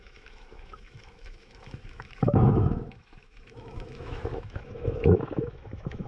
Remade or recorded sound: remade